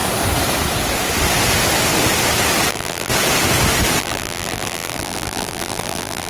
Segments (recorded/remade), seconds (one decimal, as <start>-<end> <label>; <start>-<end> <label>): 0.0-2.7 recorded; 2.7-3.1 remade; 3.1-4.0 recorded; 4.0-6.3 remade